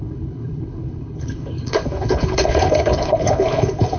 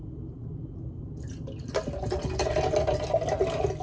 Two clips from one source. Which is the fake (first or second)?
first